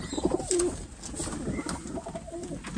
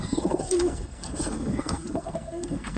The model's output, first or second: second